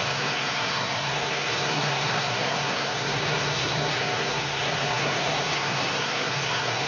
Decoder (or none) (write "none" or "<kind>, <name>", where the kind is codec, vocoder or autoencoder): codec, SNAC